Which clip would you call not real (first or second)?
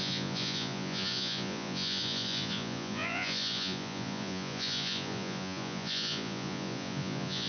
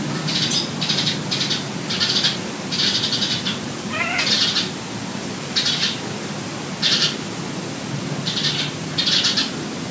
first